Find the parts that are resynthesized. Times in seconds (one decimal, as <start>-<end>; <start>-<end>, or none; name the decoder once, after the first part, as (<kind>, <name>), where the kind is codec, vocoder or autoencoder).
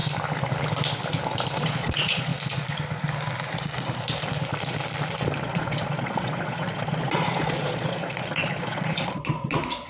1.6-2.3 (vocoder, Vocos); 5.4-9.9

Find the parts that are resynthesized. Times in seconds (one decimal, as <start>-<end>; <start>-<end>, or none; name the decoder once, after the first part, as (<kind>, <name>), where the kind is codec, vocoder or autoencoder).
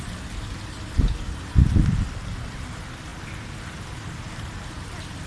none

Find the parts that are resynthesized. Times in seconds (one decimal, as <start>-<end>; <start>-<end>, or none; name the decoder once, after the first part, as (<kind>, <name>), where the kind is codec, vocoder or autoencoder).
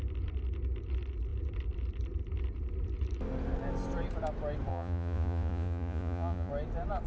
4.7-6.5 (vocoder, Vocos)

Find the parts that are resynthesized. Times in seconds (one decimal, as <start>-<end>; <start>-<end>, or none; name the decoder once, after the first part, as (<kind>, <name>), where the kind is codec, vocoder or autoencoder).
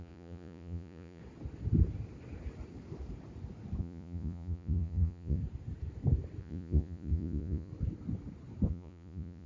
0.0-1.2 (vocoder, Vocos); 3.8-5.4; 6.4-7.7; 8.7-9.5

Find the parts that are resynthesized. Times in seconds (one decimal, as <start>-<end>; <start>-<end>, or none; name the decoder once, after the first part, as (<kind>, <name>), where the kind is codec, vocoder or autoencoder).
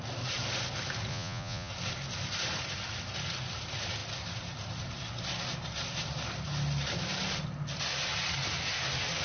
1.1-1.7 (vocoder, Vocos)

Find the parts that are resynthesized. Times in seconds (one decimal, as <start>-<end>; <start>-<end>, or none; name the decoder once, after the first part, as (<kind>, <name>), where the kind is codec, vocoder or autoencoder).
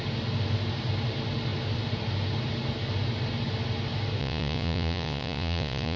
4.2-6.0 (vocoder, Vocos)